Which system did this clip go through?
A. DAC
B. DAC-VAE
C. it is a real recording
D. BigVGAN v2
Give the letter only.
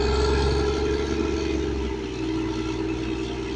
C